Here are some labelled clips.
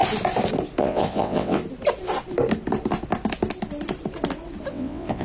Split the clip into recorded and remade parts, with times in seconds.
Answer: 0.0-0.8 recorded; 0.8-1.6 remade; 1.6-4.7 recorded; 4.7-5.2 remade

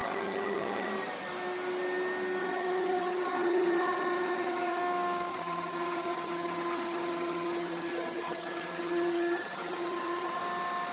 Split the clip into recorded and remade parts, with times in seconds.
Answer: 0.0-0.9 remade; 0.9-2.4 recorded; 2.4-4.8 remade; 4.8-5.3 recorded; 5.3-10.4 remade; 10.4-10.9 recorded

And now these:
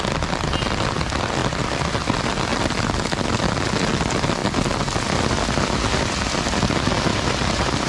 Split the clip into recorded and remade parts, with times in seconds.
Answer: 0.0-7.1 recorded; 7.1-7.9 remade